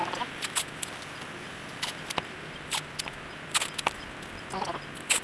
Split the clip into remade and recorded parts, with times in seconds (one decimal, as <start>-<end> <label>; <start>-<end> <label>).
0.0-5.2 recorded